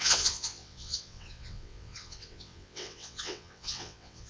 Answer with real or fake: fake